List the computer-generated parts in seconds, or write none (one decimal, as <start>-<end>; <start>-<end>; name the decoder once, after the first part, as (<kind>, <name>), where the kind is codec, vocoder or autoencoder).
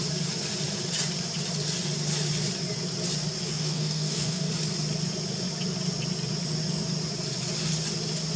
3.5-4.5 (codec, DAC)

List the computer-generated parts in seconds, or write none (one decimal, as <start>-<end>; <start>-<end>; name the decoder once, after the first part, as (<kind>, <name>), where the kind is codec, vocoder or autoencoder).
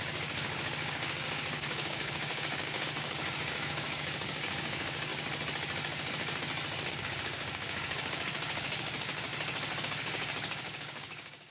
0.0-5.1 (codec, DAC); 6.9-9.3; 9.8-11.5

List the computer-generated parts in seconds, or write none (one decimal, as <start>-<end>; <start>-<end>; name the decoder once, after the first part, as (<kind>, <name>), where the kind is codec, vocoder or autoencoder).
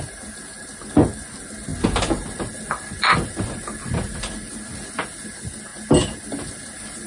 none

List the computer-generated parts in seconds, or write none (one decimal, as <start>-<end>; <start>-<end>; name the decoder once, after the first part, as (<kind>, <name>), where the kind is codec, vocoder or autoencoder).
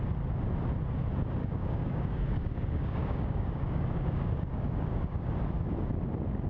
1.4-5.3 (codec, DAC)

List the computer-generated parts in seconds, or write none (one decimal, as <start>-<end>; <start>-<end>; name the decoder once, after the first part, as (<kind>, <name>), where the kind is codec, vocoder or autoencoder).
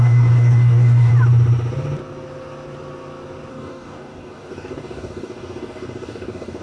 0.0-1.1 (codec, DAC); 3.5-6.6